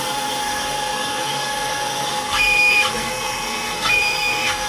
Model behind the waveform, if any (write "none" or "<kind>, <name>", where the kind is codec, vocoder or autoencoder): codec, SNAC